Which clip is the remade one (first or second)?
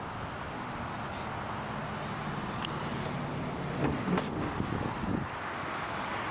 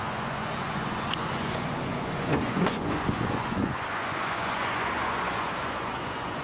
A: second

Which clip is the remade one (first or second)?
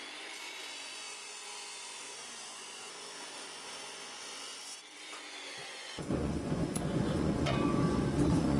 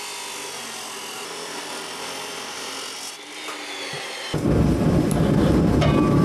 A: first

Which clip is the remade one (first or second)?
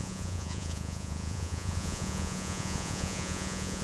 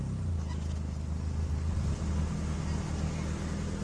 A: first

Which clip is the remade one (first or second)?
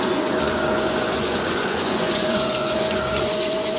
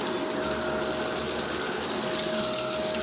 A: first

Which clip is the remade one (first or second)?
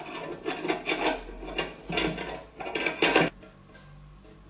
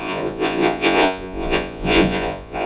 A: second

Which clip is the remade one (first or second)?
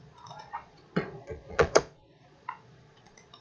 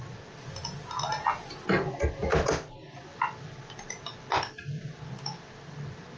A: first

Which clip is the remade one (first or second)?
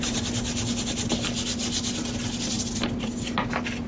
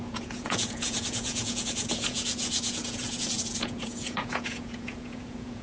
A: second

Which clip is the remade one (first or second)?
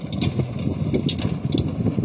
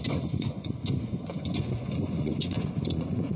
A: second